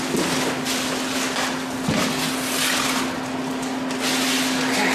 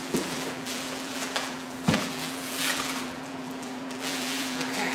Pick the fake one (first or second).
second